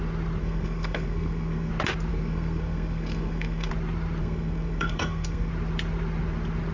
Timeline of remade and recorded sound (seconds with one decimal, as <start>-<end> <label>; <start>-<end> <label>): 0.0-0.4 recorded; 0.4-1.7 remade; 1.7-2.1 recorded; 2.1-3.7 remade; 3.7-4.2 recorded; 4.2-5.5 remade; 5.5-6.7 recorded